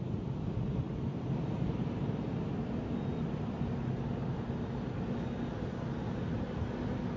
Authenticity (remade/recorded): recorded